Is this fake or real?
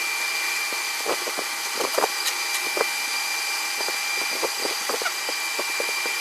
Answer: real